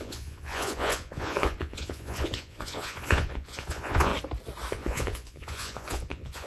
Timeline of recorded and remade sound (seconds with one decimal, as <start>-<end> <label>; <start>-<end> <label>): 0.0-4.1 remade; 4.1-4.7 recorded; 4.7-6.5 remade

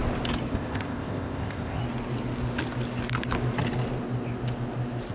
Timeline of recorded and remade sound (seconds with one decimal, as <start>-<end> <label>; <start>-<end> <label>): 0.0-0.5 recorded; 0.5-1.8 remade; 1.8-5.1 recorded